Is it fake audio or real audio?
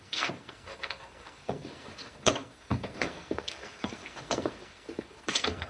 fake